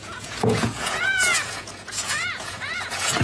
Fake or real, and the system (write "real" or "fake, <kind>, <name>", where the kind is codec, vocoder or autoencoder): fake, vocoder, Vocos